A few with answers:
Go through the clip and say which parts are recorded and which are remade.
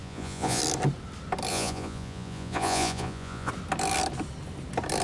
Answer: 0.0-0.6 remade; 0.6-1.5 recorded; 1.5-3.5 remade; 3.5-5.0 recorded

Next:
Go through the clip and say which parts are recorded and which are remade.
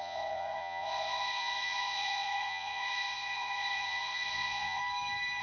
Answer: 0.0-4.8 remade; 4.8-5.4 recorded